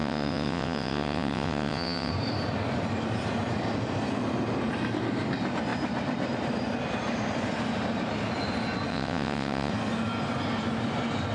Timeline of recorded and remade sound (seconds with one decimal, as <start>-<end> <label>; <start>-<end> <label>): 0.0-2.1 remade; 2.1-8.9 recorded; 8.9-9.7 remade; 9.7-11.3 recorded